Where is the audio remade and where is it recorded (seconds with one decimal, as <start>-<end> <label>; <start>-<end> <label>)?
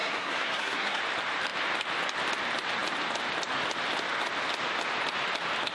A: 0.0-1.0 remade; 1.0-5.7 recorded